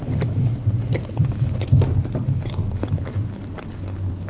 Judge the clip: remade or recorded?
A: remade